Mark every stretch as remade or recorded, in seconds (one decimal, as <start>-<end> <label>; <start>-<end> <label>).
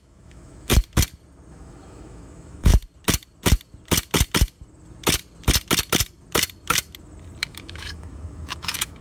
0.0-0.7 remade; 0.7-1.5 recorded; 1.5-2.7 remade; 2.7-7.4 recorded; 7.4-9.0 remade